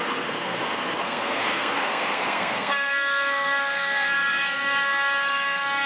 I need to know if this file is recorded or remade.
remade